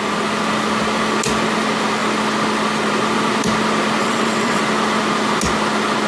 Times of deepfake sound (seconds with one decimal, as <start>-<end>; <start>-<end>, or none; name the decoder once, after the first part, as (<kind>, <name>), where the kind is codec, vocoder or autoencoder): 4.0-4.6 (vocoder, WaveNeXt)

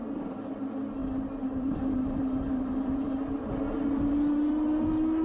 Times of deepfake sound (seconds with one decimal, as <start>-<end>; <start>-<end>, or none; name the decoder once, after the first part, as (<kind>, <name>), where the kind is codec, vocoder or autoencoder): 0.0-0.6 (vocoder, BigVGAN v2); 1.0-4.1

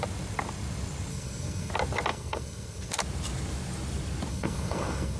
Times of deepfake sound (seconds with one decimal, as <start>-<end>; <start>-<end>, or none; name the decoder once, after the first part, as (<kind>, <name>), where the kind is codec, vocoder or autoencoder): 1.1-1.7 (codec, SNAC); 2.1-2.9; 4.3-5.2

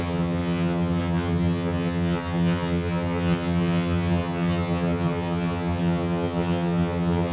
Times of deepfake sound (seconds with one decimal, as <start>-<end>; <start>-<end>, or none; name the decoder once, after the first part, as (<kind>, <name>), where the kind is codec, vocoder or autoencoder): 0.0-7.3 (vocoder, HiFi-GAN)

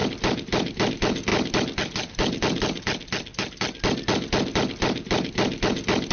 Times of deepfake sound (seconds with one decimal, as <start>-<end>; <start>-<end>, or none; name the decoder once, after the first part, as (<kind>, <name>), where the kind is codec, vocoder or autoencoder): none

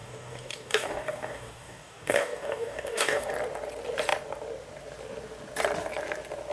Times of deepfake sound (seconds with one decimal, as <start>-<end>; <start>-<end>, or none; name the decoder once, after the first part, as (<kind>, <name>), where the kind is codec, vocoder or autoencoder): 0.0-3.3 (codec, DAC)

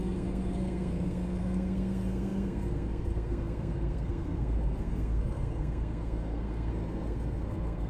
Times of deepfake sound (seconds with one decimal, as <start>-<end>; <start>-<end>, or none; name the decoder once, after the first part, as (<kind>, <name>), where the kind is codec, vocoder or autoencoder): 0.0-7.9 (codec, SNAC)

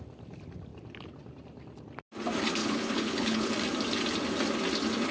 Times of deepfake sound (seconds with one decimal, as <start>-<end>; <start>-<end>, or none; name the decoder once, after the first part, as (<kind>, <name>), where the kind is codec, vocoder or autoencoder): 2.6-3.5 (codec, HILCodec)